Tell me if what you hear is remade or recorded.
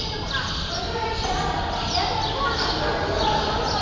recorded